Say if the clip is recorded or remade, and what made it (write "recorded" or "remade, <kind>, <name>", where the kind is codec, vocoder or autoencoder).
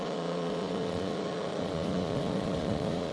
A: remade, vocoder, Vocos